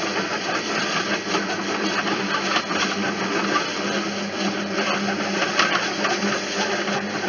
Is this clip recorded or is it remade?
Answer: recorded